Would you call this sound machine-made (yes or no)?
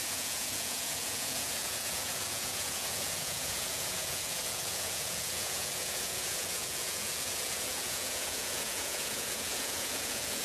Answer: yes